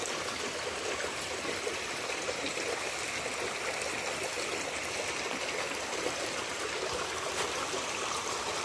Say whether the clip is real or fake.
real